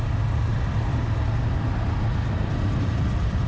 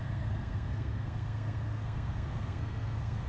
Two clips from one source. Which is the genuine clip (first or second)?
first